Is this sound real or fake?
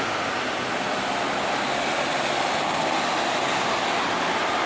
real